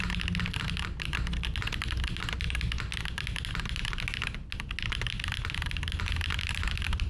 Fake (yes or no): no